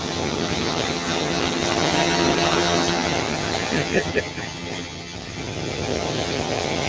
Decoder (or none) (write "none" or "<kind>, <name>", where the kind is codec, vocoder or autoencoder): vocoder, HiFi-GAN